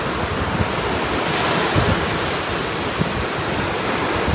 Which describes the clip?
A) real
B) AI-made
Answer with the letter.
A